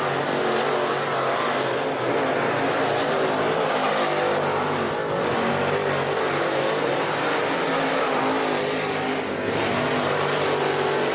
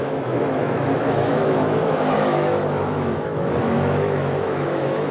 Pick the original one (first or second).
first